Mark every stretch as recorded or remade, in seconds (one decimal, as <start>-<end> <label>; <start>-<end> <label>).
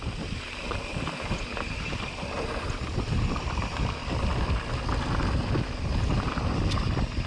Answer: 0.0-7.3 recorded